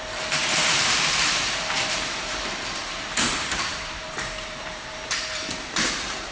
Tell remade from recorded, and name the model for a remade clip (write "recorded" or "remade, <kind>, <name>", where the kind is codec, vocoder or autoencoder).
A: remade, vocoder, BigVGAN v2